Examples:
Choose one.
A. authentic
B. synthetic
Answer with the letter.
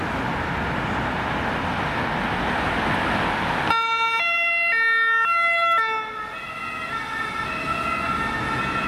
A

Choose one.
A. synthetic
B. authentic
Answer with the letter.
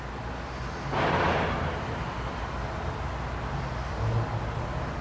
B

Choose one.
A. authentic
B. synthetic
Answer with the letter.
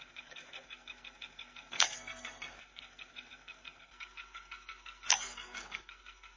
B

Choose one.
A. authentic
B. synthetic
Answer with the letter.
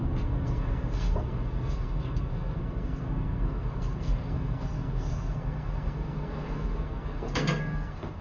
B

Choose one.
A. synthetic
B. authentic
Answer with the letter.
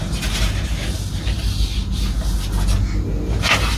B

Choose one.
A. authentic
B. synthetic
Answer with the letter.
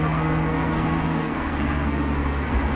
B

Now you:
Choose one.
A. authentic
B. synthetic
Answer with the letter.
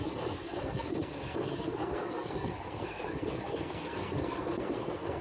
B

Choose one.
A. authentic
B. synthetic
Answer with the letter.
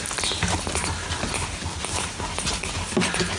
A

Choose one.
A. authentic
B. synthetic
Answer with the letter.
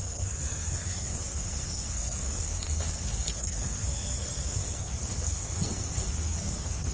B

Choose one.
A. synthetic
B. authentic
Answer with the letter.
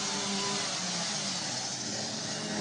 B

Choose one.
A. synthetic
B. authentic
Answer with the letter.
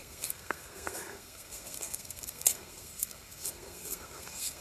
A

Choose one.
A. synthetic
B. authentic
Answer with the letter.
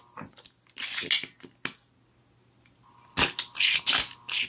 B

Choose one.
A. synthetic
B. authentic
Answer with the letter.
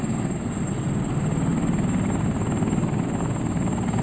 B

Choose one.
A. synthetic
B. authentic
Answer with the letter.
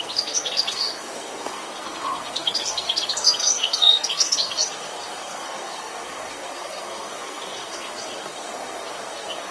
A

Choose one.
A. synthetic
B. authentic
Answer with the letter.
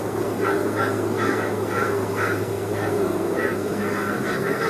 A